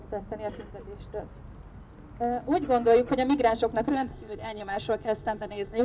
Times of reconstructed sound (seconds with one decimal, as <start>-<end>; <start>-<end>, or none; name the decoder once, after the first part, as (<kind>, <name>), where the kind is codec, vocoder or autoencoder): 3.9-5.8 (codec, ZipCodec)